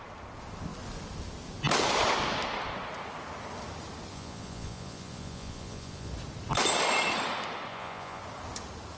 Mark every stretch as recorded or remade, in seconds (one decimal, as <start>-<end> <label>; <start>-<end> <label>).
0.0-4.1 recorded; 4.1-6.1 remade; 6.1-7.7 recorded; 7.7-8.2 remade; 8.2-9.0 recorded